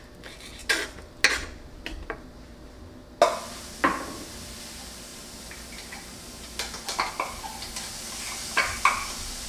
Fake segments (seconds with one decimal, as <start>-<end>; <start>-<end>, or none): none

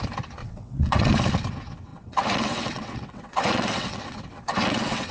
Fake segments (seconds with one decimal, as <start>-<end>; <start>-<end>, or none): 0.4-1.1; 1.9-5.1

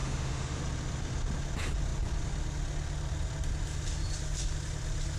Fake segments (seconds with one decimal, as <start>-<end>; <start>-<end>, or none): 0.0-0.6

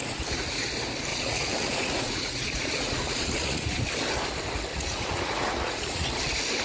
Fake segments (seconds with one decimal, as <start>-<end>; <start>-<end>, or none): 1.1-3.8; 4.7-6.1